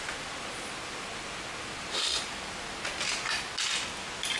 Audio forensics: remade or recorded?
recorded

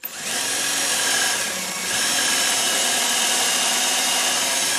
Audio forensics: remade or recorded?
remade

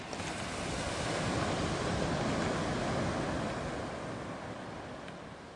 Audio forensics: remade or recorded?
recorded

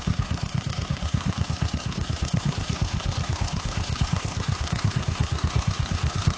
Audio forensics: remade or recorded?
remade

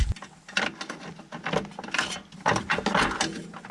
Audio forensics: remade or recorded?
recorded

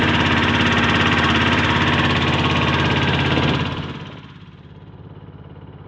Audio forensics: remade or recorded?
recorded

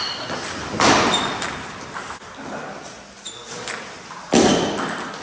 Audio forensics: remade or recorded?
recorded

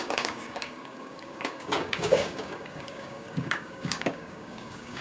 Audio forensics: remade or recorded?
remade